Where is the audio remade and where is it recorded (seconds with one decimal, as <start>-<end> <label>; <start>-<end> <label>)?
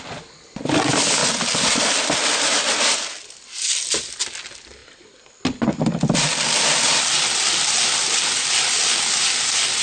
0.0-9.8 recorded